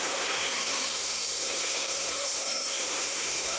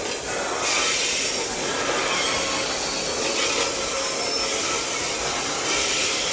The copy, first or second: first